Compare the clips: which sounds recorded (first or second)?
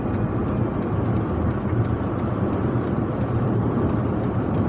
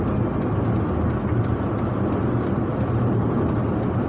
second